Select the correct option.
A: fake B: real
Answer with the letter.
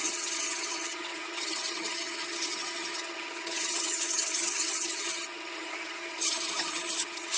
A